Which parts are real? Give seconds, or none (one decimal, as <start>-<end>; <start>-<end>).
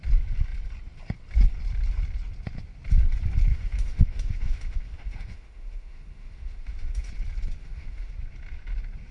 0.0-3.5; 7.1-7.6; 8.1-9.1